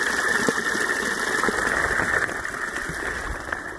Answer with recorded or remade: recorded